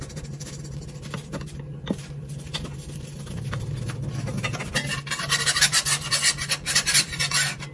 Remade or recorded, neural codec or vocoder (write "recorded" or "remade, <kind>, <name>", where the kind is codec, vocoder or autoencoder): recorded